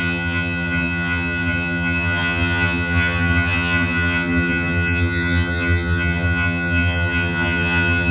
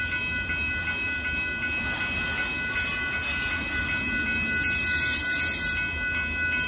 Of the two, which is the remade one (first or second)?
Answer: first